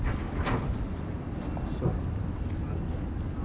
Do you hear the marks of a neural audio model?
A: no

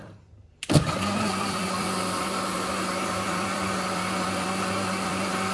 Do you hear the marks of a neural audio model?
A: yes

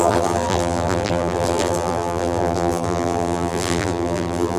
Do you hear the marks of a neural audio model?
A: yes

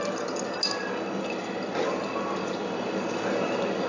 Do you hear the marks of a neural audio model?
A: no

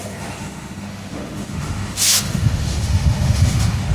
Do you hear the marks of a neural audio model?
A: yes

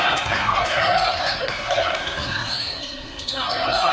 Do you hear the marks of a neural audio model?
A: yes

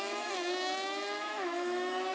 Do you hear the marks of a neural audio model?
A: yes